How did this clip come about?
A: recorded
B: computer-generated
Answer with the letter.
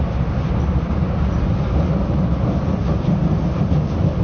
A